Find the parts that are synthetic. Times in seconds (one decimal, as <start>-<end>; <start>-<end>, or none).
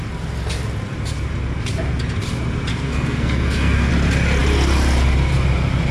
2.7-3.9